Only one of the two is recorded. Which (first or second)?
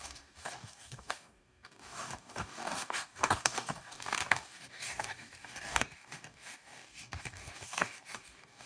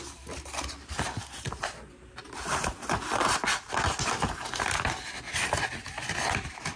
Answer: second